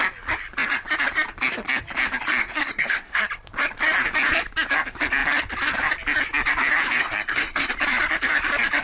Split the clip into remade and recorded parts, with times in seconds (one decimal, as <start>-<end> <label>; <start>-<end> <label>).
0.0-2.4 recorded; 2.4-3.3 remade; 3.3-7.0 recorded; 7.0-7.7 remade; 7.7-8.8 recorded